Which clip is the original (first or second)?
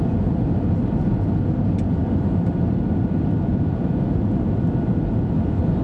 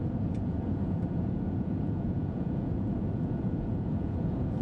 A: first